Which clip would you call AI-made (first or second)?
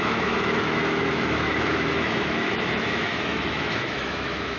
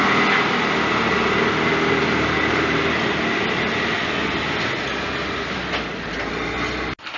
first